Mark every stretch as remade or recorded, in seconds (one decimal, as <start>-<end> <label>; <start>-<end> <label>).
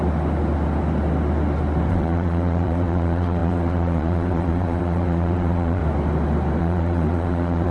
0.0-1.9 recorded; 1.9-5.8 remade; 5.8-6.6 recorded; 6.6-7.7 remade